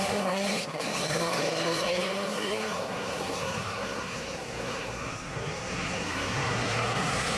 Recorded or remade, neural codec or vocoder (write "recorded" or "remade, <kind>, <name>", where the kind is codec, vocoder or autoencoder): remade, codec, SNAC